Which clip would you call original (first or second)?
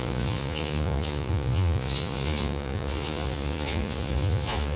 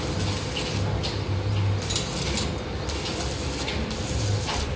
second